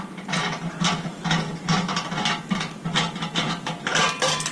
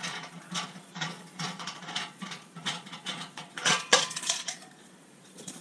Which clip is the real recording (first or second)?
first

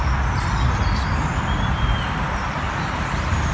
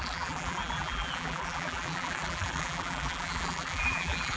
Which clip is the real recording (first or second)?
first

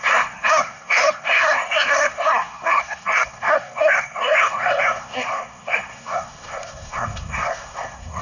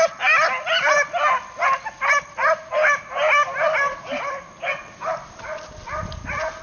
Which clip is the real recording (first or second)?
second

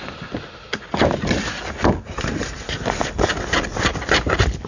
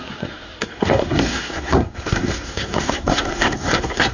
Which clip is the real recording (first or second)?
first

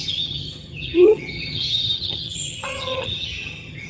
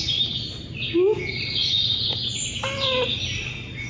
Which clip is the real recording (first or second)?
second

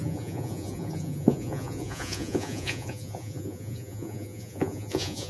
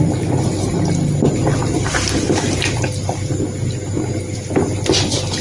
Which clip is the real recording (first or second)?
second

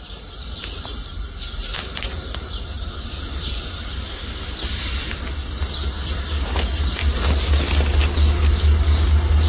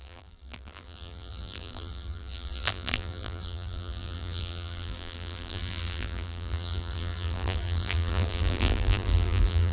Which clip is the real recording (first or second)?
first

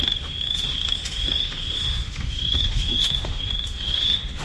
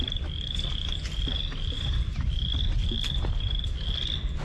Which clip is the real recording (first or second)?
second